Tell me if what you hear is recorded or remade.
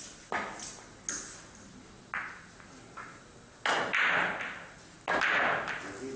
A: recorded